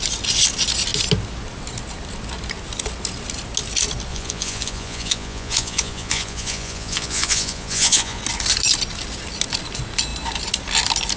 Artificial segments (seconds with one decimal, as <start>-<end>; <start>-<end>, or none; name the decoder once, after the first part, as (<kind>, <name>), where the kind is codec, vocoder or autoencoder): 4.1-8.2 (vocoder, Vocos)